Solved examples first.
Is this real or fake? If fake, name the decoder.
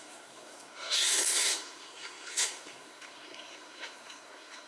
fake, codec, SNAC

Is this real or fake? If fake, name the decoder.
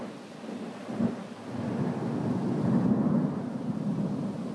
real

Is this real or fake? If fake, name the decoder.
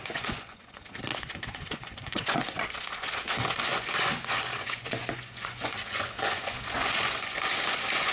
fake, vocoder, Vocos